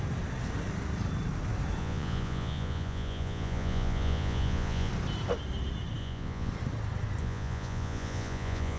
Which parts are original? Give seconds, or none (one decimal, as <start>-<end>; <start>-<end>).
0.0-1.8; 4.9-6.0; 6.5-7.2